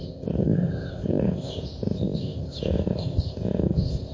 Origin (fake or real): fake